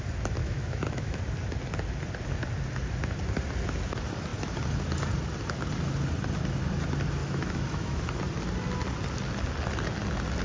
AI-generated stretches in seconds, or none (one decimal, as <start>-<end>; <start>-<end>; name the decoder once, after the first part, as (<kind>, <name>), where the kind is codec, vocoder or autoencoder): 0.4-1.2 (autoencoder, DAC-VAE); 7.2-8.0

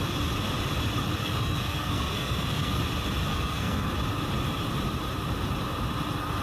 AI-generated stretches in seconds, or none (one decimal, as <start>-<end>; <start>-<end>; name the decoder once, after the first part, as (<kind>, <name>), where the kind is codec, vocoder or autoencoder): 1.2-2.8 (codec, SNAC); 3.3-3.9